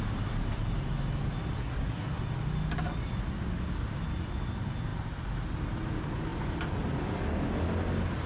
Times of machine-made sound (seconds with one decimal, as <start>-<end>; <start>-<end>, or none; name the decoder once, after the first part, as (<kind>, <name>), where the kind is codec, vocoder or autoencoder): 1.6-2.2 (codec, SNAC)